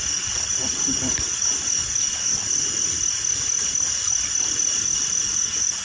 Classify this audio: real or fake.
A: real